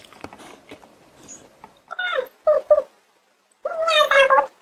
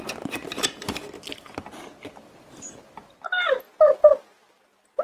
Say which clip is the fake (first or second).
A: first